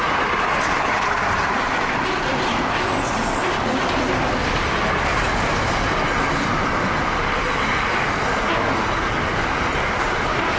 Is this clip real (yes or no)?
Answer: yes